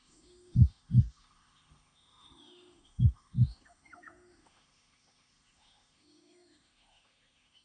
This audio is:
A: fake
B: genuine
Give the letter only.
A